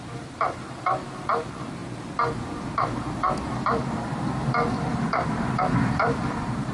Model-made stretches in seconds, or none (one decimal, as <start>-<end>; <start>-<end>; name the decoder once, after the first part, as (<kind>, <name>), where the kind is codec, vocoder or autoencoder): 0.0-6.7 (vocoder, BigVGAN v2)